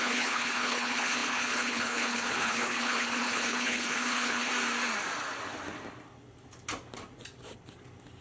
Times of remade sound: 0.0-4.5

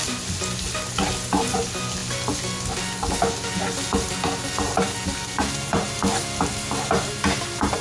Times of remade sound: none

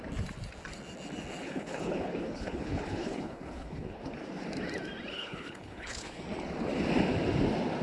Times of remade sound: 1.4-4.0; 5.1-6.2

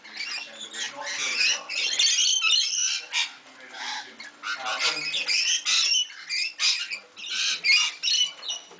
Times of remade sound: none

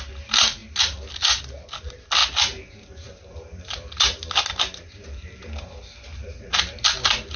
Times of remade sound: none

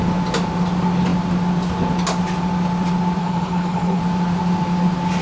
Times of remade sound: 3.2-4.0